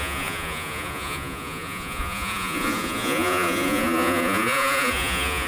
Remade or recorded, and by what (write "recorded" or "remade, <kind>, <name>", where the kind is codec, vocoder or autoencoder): remade, vocoder, Vocos